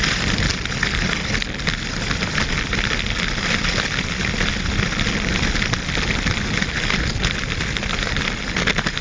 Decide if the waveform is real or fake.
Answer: real